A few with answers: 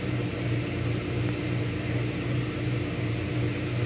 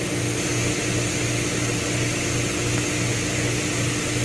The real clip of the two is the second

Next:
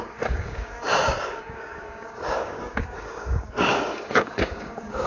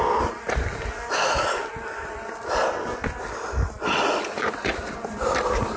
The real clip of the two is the second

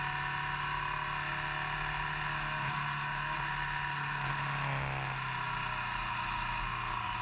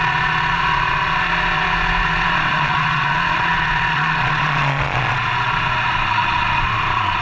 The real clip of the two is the first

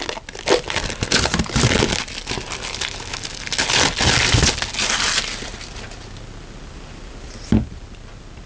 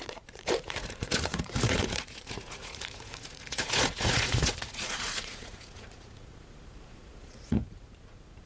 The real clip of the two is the first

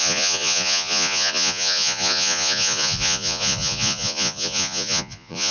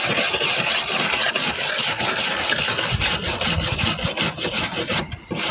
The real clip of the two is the second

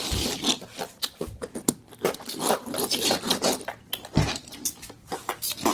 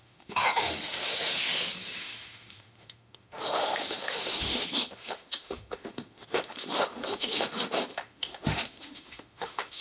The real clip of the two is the first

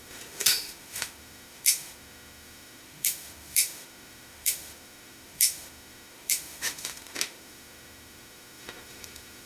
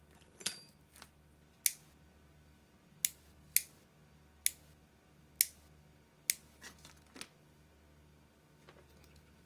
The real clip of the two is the second